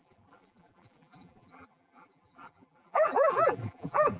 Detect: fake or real fake